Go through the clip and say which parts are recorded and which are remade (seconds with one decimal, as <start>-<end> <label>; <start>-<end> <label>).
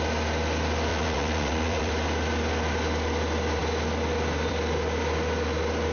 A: 0.0-0.9 recorded; 0.9-1.9 remade; 1.9-5.9 recorded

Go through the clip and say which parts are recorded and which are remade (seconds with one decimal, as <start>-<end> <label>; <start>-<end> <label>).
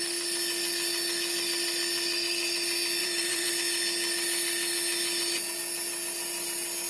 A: 0.0-3.0 recorded; 3.0-3.5 remade; 3.5-6.9 recorded